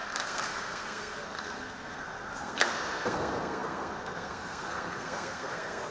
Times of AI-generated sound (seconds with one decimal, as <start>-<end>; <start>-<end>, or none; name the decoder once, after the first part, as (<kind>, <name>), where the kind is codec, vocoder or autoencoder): 0.0-5.9 (codec, SNAC)